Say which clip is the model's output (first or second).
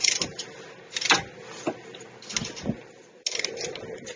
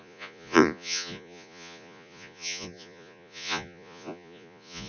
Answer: second